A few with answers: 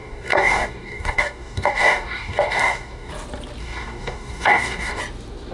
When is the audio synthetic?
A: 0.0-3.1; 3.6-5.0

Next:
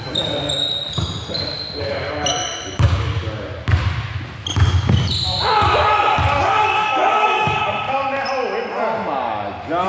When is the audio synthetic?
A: 6.2-7.6

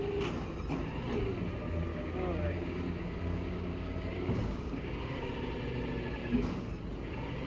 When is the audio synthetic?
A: 1.9-5.3; 6.2-6.7

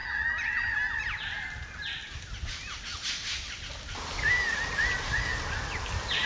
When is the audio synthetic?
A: none

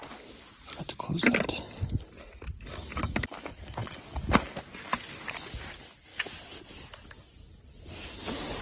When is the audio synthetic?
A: 2.9-4.5

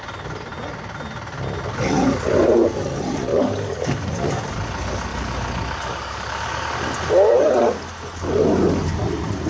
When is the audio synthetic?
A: 3.3-4.3; 5.1-6.7

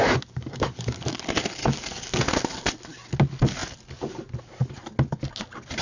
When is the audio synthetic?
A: 0.0-1.1; 1.6-2.2

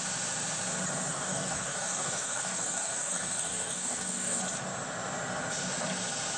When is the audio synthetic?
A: 1.1-4.4